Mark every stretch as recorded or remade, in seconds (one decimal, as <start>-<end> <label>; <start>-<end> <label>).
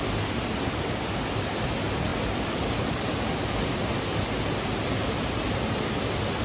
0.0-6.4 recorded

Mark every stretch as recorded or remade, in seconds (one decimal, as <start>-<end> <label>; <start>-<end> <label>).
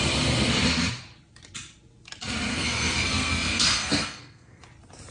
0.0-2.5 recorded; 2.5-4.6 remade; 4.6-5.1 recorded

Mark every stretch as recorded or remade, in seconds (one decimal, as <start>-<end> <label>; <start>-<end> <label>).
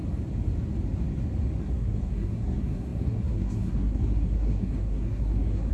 0.0-1.6 recorded; 1.6-5.7 remade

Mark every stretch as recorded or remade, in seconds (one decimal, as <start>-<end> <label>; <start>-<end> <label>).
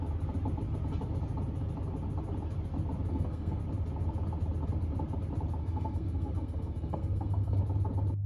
0.0-3.1 recorded; 3.1-3.6 remade; 3.6-5.6 recorded; 5.6-7.6 remade; 7.6-8.3 recorded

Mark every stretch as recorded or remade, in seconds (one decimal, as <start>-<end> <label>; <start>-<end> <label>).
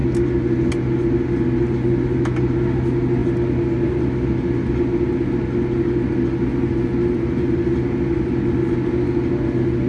0.0-9.9 recorded